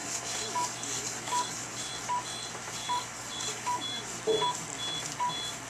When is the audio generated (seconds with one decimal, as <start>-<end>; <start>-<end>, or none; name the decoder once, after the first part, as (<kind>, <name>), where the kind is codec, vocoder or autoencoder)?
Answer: 0.0-1.9 (codec, DAC); 2.8-4.0